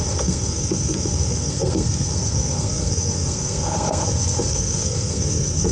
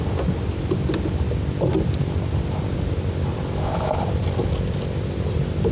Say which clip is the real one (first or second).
second